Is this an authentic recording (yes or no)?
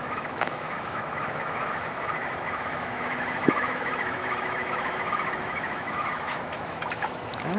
no